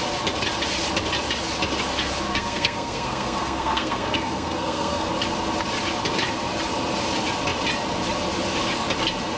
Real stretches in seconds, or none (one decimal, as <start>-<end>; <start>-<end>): 0.0-2.3; 5.1-9.4